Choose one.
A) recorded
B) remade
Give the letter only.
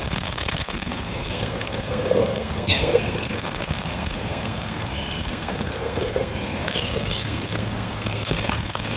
B